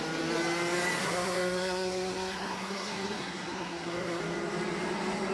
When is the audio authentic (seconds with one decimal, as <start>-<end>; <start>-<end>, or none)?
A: 0.0-1.0; 4.2-5.3